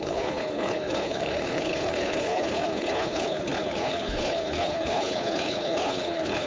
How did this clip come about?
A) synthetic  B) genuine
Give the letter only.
A